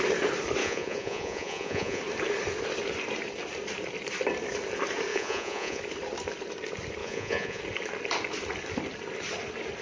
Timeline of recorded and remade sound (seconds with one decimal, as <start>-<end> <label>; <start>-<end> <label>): 0.0-0.6 recorded; 0.6-2.0 remade; 2.0-5.1 recorded; 5.1-5.8 remade; 5.8-7.0 recorded; 7.0-7.6 remade; 7.6-9.8 recorded